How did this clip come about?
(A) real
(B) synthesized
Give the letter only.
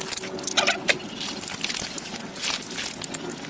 A